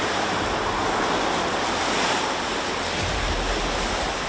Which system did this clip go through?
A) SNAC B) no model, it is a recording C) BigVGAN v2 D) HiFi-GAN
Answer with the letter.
B